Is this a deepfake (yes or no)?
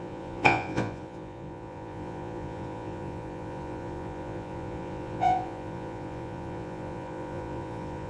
yes